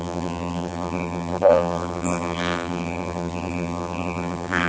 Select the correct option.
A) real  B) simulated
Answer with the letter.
B